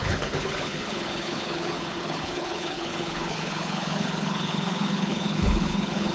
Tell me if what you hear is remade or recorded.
remade